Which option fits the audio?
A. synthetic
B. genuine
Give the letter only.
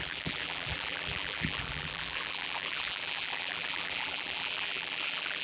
A